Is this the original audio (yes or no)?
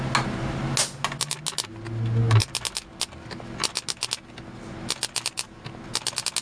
yes